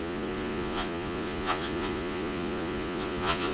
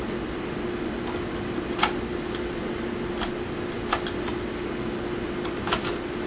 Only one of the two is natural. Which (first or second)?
second